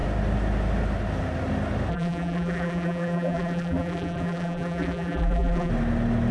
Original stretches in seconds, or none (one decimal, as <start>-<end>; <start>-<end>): 0.0-1.9; 5.7-6.3